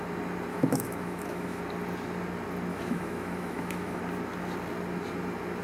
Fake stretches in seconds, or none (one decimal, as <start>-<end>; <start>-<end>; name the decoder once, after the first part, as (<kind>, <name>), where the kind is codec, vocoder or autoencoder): 0.5-1.6 (autoencoder, DAC-VAE); 2.7-4.0